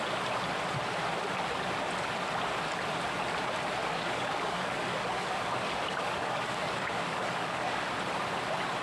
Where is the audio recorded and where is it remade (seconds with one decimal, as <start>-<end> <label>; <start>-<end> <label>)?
0.0-3.8 recorded; 3.8-7.8 remade; 7.8-8.8 recorded